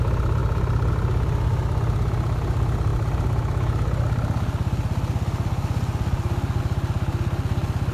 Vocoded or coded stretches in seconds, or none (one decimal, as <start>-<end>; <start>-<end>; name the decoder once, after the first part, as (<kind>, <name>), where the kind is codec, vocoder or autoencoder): none